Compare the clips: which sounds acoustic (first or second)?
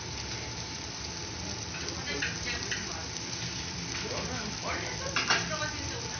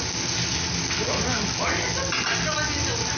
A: second